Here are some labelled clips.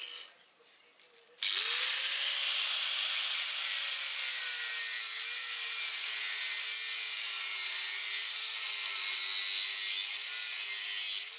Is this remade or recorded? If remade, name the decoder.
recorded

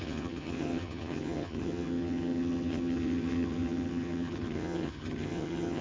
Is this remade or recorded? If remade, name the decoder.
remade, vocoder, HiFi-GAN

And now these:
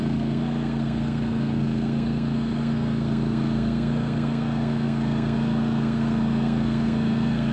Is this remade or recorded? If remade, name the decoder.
remade, codec, SNAC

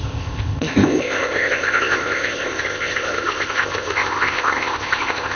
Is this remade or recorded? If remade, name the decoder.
remade, codec, ZipCodec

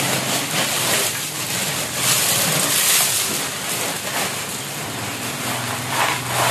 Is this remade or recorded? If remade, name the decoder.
recorded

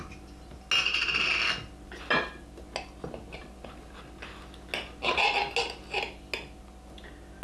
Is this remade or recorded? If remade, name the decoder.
recorded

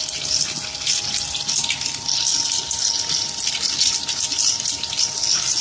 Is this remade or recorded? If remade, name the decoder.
recorded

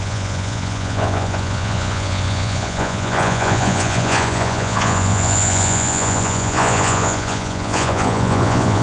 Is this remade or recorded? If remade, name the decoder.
remade, vocoder, Vocos